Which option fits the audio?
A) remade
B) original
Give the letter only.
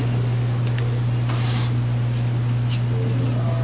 B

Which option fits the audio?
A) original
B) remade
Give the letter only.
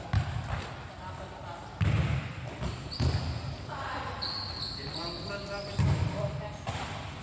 A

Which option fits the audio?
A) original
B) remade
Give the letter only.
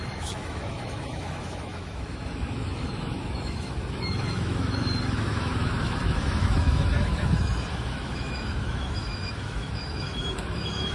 B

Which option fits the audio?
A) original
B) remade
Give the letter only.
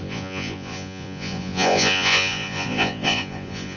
B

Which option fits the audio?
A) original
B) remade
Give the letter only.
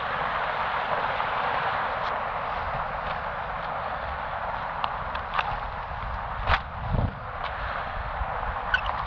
A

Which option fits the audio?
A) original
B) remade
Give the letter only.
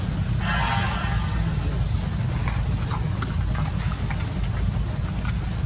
A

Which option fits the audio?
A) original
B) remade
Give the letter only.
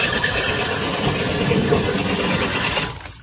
A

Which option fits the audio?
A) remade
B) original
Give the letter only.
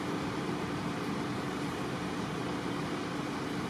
A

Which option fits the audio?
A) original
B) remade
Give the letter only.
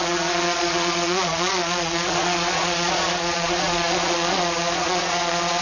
B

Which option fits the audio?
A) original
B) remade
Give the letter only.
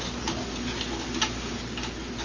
A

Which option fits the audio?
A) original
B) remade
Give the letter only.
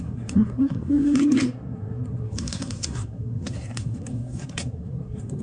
B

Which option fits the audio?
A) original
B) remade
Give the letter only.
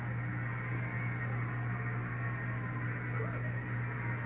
A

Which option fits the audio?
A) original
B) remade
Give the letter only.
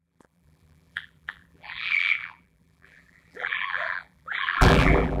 B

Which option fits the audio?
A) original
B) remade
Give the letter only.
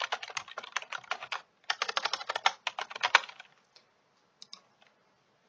A